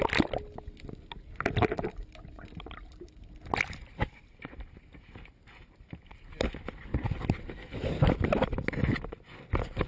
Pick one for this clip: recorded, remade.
recorded